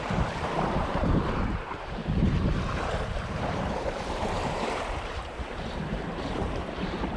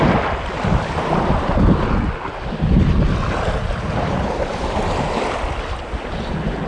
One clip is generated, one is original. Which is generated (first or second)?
first